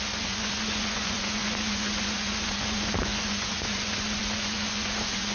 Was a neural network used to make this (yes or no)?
yes